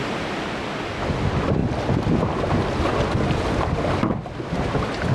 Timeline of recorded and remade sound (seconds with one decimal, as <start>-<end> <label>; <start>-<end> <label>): 0.0-5.1 recorded